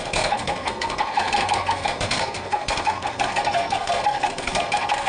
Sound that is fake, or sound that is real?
fake